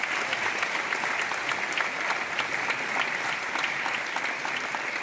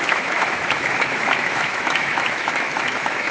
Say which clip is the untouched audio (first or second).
first